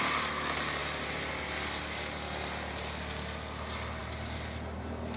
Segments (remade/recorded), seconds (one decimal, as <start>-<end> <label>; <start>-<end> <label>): 0.0-5.2 recorded